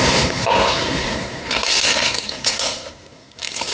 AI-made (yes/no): yes